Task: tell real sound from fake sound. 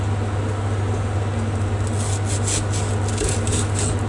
real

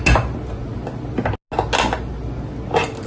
real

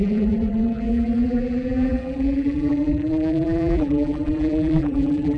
fake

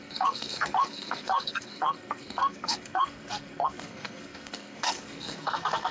fake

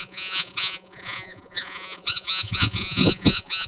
fake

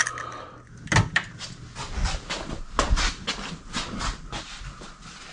real